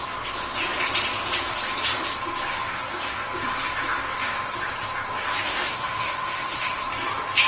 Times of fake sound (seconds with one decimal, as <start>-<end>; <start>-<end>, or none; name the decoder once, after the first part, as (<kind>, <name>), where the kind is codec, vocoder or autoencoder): 5.5-6.8 (autoencoder, DAC-VAE)

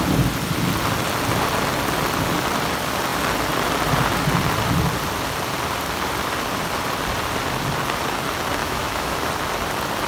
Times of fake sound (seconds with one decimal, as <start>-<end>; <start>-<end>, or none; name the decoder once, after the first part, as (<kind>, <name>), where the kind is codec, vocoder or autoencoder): 8.6-9.3 (autoencoder, DAC-VAE)

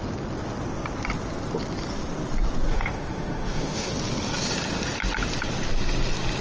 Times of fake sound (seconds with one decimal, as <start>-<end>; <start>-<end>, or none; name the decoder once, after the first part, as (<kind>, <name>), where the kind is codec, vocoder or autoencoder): 2.7-3.9 (autoencoder, DAC-VAE)

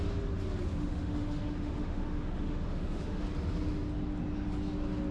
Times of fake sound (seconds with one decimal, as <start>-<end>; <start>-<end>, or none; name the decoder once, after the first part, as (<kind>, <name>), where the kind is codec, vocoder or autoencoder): 0.7-3.2 (autoencoder, DAC-VAE)